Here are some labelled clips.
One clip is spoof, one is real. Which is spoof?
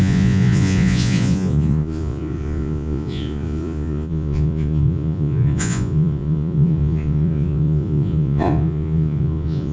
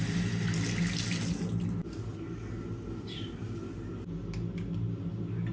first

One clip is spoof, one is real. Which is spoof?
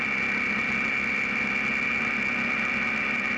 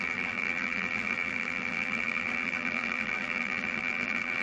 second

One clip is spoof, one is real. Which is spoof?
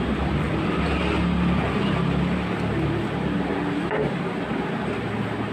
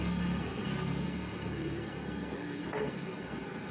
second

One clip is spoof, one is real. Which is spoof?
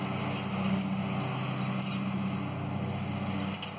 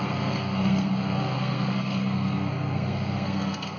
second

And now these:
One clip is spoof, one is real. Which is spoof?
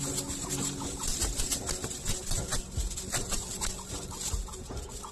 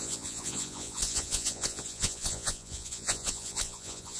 second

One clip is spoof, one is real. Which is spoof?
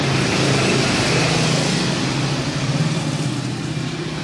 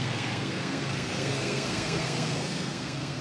second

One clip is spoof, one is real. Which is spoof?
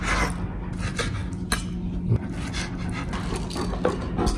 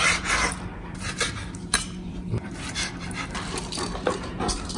second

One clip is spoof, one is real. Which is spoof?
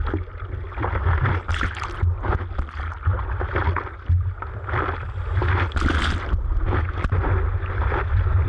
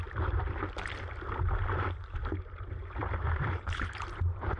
second